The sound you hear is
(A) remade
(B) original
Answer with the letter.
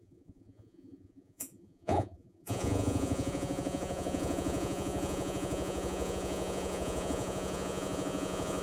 A